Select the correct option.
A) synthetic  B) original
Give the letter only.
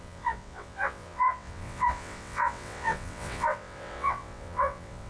A